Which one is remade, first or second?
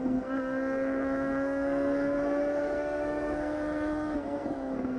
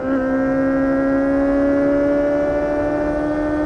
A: first